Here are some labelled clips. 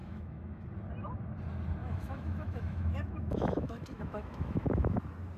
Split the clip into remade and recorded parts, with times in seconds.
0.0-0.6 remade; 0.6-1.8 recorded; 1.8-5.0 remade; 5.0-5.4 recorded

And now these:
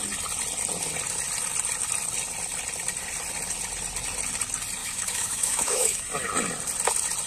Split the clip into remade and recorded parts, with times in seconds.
0.0-4.8 recorded; 4.8-6.0 remade; 6.0-7.3 recorded

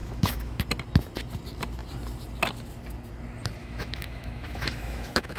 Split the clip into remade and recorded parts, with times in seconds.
0.0-0.6 remade; 0.6-3.6 recorded; 3.6-5.4 remade

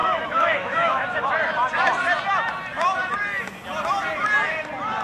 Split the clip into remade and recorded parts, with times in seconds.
0.0-1.3 remade; 1.3-5.0 recorded

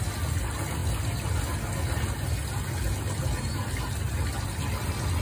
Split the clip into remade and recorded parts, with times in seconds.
0.0-5.2 recorded

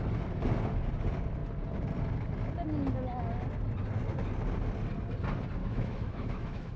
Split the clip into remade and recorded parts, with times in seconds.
0.0-5.6 recorded; 5.6-6.8 remade

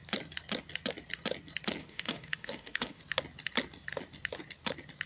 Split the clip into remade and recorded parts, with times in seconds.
0.0-1.8 recorded; 1.8-3.0 remade; 3.0-5.1 recorded